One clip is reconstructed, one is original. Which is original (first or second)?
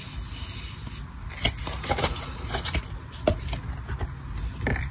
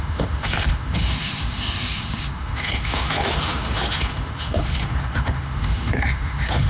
first